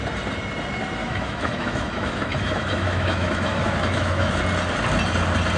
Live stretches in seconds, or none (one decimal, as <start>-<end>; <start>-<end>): 0.0-1.0; 4.4-5.6